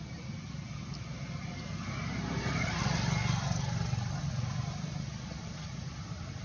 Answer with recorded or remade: recorded